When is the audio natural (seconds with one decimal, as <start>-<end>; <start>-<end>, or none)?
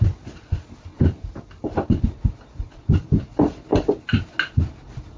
0.0-5.2